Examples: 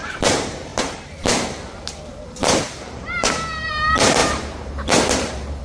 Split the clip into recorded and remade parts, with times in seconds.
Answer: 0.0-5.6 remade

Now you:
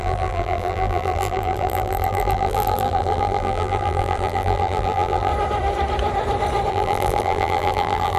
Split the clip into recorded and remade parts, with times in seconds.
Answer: 0.0-5.3 remade; 5.3-6.7 recorded; 6.7-8.2 remade

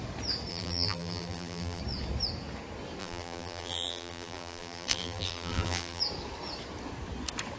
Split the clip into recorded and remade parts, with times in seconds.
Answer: 0.0-0.5 recorded; 0.5-1.8 remade; 1.8-3.0 recorded; 3.0-6.0 remade; 6.0-7.6 recorded

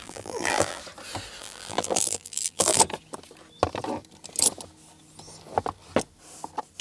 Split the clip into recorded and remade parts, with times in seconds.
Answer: 0.0-0.8 remade; 0.8-1.4 recorded; 1.4-2.8 remade; 2.8-6.8 recorded

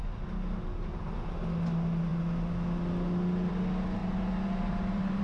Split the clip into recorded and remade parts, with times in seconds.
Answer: 0.0-4.0 recorded; 4.0-5.2 remade

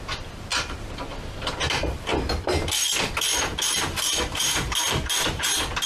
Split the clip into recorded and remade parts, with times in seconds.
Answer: 0.0-0.5 recorded; 0.5-1.0 remade; 1.0-4.3 recorded; 4.3-5.9 remade